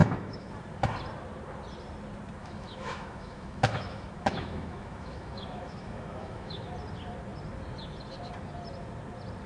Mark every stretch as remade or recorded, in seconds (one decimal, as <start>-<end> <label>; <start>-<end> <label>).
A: 0.0-0.5 remade; 0.5-2.4 recorded; 2.4-6.7 remade; 6.7-9.5 recorded